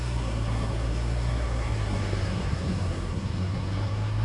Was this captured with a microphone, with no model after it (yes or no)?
no